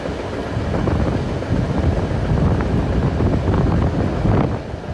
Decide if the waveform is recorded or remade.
recorded